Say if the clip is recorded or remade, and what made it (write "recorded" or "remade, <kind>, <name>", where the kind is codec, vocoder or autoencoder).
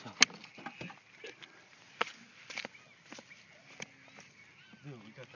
recorded